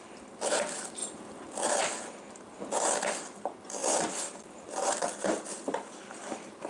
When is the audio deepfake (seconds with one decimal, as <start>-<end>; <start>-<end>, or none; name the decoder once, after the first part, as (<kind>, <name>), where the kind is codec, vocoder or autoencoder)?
1.0-1.8 (vocoder, BigVGAN v2); 3.8-6.7